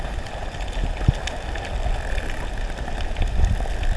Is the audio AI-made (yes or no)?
no